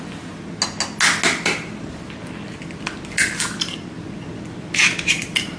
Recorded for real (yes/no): yes